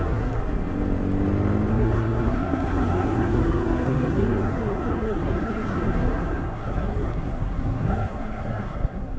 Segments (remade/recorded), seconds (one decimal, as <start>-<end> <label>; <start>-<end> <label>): 0.0-0.4 remade; 0.4-1.7 recorded; 1.7-9.2 remade

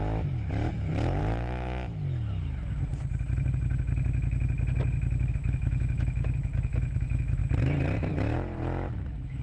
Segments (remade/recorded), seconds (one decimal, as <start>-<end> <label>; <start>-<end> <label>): 0.0-1.2 remade; 1.2-5.3 recorded; 5.3-7.4 remade; 7.4-8.1 recorded; 8.1-9.4 remade